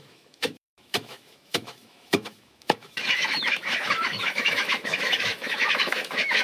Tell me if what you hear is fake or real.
fake